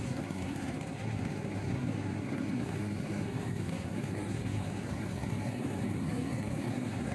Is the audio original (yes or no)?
no